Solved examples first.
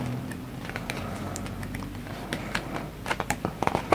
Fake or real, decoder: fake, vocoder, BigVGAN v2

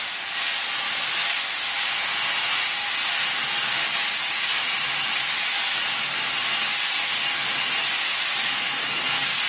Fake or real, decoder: real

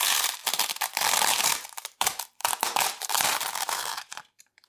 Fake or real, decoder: fake, vocoder, BigVGAN v2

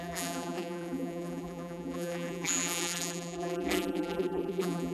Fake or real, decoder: fake, vocoder, BigVGAN v2